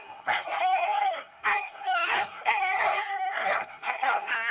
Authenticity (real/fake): fake